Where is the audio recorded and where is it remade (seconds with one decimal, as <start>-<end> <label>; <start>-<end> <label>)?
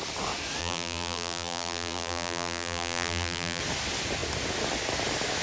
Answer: 0.0-0.6 recorded; 0.6-3.6 remade; 3.6-5.4 recorded